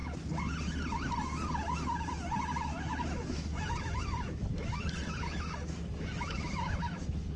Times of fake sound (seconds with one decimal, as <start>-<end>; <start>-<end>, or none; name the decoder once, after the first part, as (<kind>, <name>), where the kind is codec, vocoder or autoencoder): 2.7-7.4 (autoencoder, DAC-VAE)